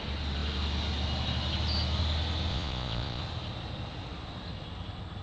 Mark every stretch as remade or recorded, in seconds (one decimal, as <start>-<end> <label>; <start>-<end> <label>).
0.0-2.5 recorded; 2.5-3.2 remade; 3.2-5.2 recorded